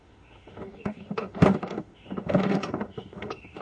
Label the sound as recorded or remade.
remade